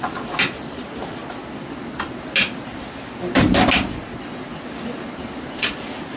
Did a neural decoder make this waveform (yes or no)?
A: no